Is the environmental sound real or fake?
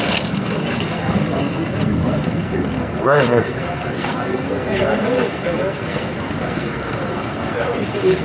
fake